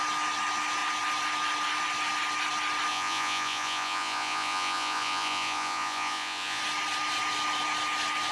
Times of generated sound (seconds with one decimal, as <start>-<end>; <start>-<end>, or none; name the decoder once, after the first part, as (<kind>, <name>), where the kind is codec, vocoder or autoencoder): 2.9-6.6 (vocoder, Vocos)